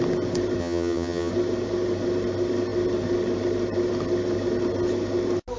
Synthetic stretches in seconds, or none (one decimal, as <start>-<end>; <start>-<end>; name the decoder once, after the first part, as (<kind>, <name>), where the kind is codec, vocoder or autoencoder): 0.6-1.3 (vocoder, HiFi-GAN)